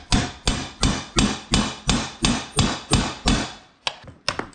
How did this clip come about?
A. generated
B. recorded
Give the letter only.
B